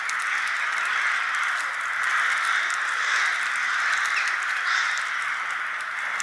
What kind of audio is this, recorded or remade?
recorded